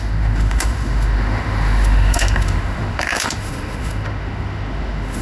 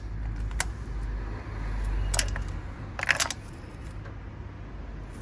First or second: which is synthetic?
first